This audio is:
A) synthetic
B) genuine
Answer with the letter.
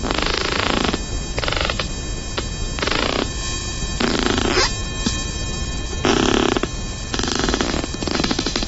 B